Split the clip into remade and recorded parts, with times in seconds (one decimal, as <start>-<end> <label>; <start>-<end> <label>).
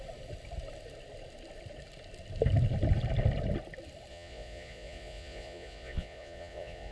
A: 0.0-4.1 recorded; 4.1-6.9 remade